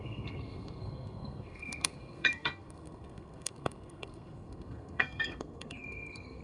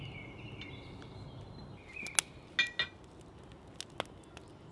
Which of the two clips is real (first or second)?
second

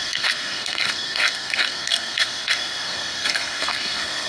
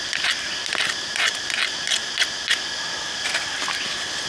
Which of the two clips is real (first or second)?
second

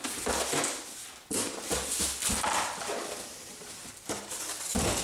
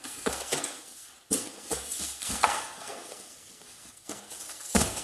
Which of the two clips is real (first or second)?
first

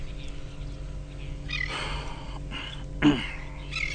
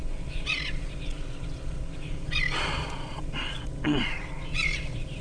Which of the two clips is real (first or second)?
first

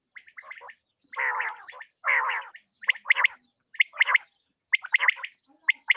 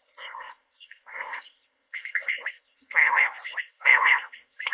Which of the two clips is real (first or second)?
first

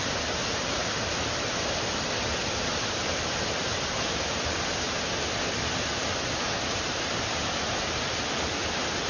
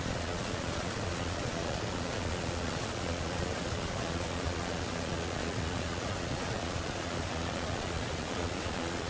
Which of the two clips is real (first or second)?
first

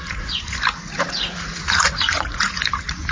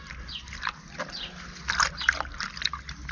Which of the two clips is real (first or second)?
second